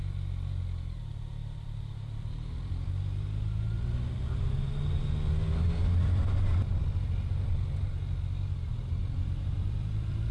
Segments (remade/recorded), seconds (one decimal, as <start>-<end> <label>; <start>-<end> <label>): 0.0-1.4 recorded; 1.4-2.9 remade; 2.9-9.0 recorded; 9.0-10.3 remade